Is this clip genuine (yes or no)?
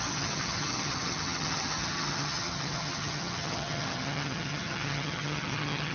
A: no